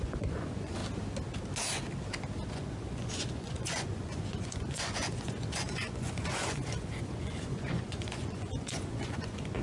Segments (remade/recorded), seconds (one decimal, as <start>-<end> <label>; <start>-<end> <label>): 0.0-0.8 remade; 0.8-2.5 recorded; 2.5-9.6 remade